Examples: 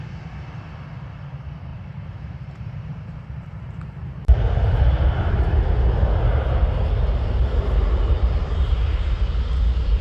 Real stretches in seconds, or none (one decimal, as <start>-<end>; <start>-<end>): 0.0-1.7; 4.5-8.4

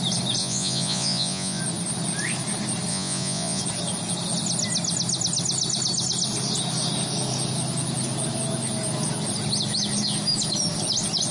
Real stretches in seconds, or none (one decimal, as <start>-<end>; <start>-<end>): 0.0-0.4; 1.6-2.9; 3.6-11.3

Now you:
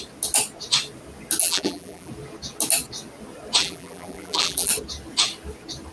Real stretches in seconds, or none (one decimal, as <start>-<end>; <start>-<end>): 0.0-1.4; 2.1-3.6; 4.7-5.9